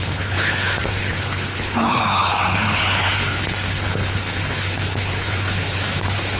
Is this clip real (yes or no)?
no